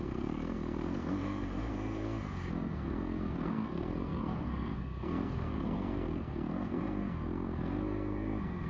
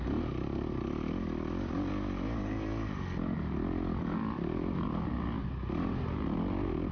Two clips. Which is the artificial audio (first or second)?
first